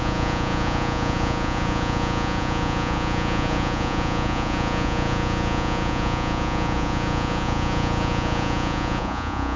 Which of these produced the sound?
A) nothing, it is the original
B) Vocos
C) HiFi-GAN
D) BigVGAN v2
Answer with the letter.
B